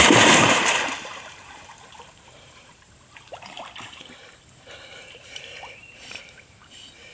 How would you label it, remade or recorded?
remade